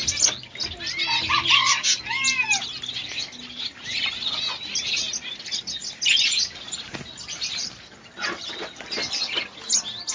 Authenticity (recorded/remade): recorded